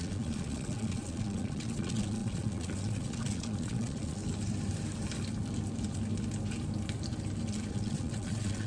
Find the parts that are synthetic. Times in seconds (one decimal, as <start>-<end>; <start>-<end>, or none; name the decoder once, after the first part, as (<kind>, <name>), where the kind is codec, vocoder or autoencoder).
0.0-4.2 (vocoder, Vocos); 7.7-8.7